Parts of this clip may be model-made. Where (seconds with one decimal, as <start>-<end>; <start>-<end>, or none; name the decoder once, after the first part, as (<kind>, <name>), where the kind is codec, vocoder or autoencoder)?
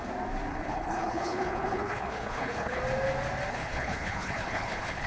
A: 0.5-2.8 (codec, HILCodec); 3.5-5.1